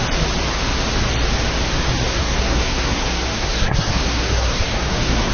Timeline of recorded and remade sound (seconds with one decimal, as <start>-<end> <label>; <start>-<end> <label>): 0.0-2.1 recorded; 2.1-5.3 remade